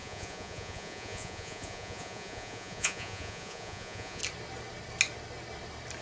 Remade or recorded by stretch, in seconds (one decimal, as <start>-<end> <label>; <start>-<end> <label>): 0.0-4.2 remade; 4.2-6.0 recorded